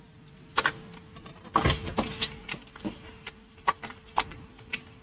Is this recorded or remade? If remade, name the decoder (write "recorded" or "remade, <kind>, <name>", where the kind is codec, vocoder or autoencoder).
recorded